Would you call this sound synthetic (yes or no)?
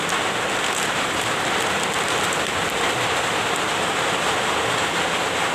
no